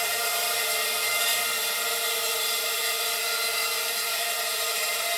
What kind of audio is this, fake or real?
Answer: fake